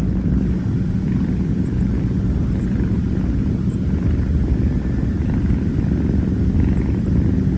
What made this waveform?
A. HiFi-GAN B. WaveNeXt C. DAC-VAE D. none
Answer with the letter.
D